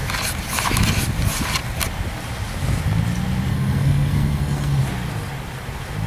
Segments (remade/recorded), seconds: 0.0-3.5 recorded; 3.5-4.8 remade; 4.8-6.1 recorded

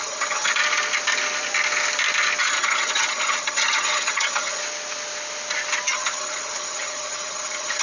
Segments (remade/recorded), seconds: 0.0-0.6 remade; 0.6-2.4 recorded; 2.4-4.6 remade; 4.6-5.9 recorded; 5.9-7.8 remade